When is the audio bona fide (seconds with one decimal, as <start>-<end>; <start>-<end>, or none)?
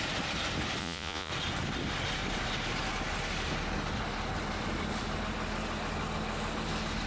0.0-0.8; 1.3-7.1